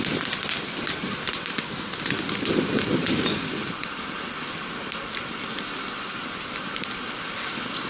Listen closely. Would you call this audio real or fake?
real